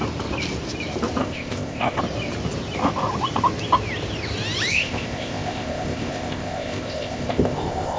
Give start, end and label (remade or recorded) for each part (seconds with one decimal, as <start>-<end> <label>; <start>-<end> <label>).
0.0-1.2 recorded; 1.2-2.0 remade; 2.0-4.7 recorded; 4.7-8.0 remade